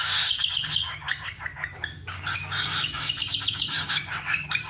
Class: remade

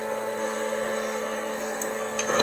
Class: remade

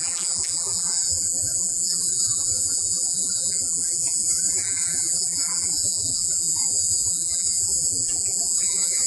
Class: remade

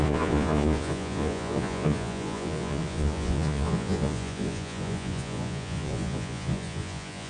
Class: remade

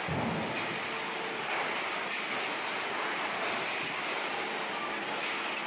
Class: recorded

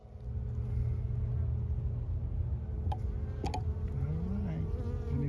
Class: recorded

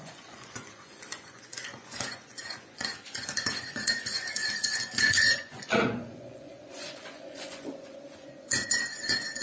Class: remade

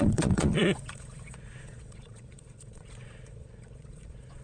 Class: remade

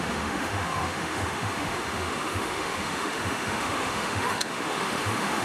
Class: remade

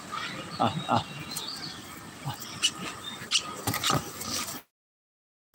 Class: recorded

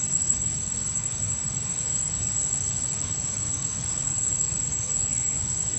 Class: remade